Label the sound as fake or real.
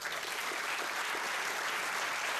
real